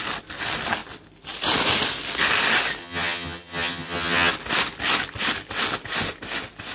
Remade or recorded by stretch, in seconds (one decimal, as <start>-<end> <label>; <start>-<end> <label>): 0.0-2.8 recorded; 2.8-4.3 remade; 4.3-6.7 recorded